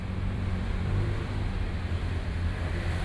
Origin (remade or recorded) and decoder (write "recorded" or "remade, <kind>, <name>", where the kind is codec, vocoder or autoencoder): remade, vocoder, BigVGAN v2